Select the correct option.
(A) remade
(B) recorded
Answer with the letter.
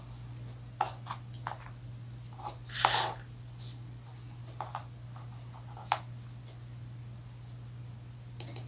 B